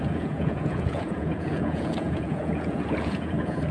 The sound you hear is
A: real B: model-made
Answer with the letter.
B